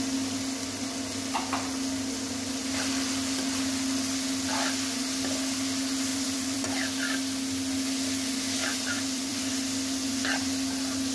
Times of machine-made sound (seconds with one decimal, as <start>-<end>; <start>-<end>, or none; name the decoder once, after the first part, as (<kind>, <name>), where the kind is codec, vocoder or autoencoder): 6.1-6.7 (vocoder, BigVGAN v2); 8.7-9.5